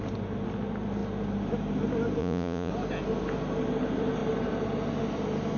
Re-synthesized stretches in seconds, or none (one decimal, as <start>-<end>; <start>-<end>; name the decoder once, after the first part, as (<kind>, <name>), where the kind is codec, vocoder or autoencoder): 2.2-2.7 (vocoder, Vocos)